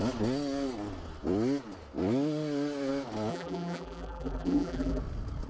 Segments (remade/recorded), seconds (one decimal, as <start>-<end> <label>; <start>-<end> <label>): 0.0-3.3 recorded; 3.3-5.0 remade; 5.0-5.5 recorded